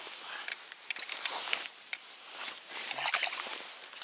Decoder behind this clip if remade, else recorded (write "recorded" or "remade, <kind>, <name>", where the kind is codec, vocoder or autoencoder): recorded